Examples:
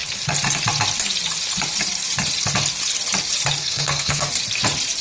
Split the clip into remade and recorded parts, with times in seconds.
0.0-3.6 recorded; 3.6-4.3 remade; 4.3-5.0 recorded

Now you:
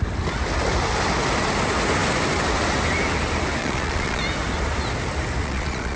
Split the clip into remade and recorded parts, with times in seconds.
0.0-3.6 recorded; 3.6-4.2 remade; 4.2-5.4 recorded; 5.4-6.0 remade

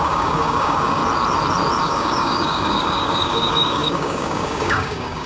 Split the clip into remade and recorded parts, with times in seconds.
0.0-1.0 remade; 1.0-1.8 recorded; 1.8-5.3 remade

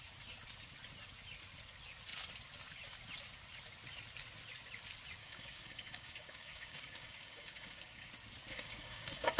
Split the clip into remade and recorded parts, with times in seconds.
0.0-5.2 recorded; 5.2-8.1 remade; 8.1-8.5 recorded; 8.5-9.4 remade

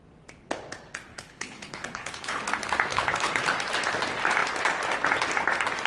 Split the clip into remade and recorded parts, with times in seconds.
0.0-1.1 recorded; 1.1-2.4 remade; 2.4-2.9 recorded; 2.9-3.4 remade; 3.4-5.9 recorded